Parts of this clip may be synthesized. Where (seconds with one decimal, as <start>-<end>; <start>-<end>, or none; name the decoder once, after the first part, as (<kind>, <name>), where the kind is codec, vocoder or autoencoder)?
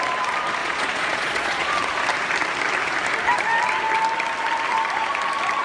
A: 0.6-1.7 (vocoder, Vocos)